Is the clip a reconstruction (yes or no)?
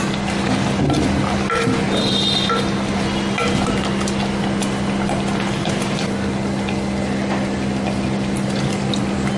no